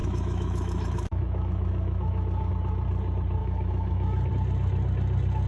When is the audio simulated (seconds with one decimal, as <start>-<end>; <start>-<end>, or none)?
0.0-2.5; 3.4-4.3

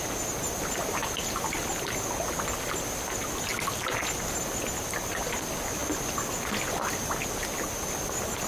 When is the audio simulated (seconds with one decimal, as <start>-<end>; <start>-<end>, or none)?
none

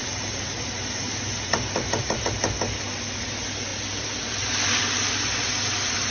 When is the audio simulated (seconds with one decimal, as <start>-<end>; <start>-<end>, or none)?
0.0-2.3; 3.7-4.4

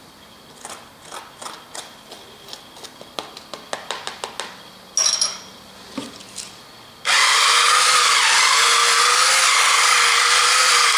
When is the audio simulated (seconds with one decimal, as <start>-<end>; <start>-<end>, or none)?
none